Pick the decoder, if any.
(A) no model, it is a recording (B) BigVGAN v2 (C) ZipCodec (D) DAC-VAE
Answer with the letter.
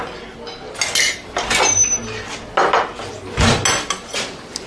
A